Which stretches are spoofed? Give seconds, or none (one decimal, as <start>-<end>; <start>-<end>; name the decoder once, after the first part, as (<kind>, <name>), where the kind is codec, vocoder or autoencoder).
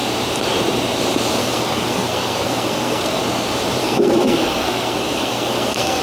1.4-3.2 (codec, SNAC); 3.8-6.0